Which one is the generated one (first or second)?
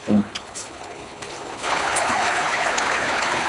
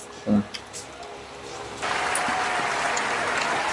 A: first